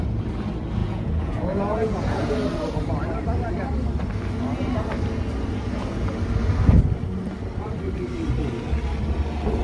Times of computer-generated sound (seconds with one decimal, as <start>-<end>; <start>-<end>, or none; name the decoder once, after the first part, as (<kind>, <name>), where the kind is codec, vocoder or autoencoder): 0.8-2.3 (vocoder, Vocos)